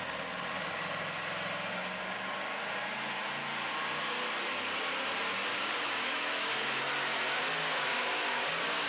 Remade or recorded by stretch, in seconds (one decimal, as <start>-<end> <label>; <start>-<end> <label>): 0.0-5.5 recorded; 5.5-6.8 remade; 6.8-7.6 recorded; 7.6-8.9 remade